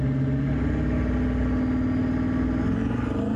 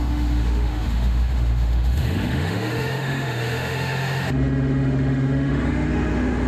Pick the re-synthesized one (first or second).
second